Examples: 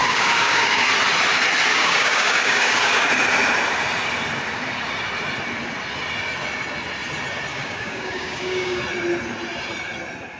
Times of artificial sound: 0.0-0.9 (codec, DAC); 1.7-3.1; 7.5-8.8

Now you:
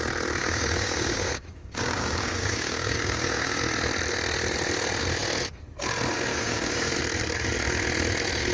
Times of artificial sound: 0.4-3.6 (codec, DAC); 6.3-6.9

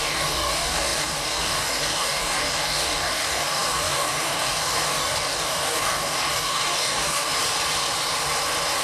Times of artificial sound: 0.0-7.3 (codec, DAC)

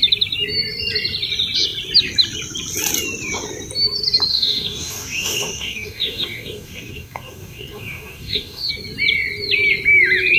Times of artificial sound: 4.3-8.7 (codec, DAC)

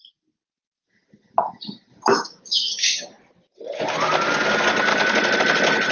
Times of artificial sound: 2.1-3.1 (codec, DAC)

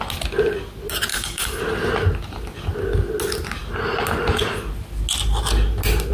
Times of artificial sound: 1.1-1.6 (codec, DAC)

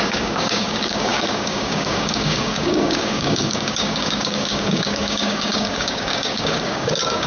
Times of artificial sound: 0.0-7.3 (codec, DAC)

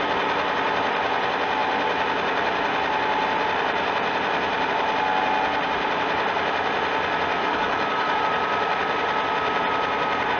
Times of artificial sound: 7.4-8.2 (codec, DAC)